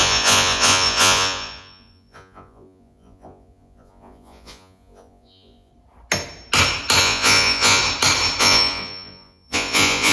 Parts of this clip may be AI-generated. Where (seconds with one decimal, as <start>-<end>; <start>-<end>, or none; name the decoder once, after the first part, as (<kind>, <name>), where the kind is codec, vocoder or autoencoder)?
0.0-5.7 (vocoder, Vocos); 7.0-7.8; 8.4-10.1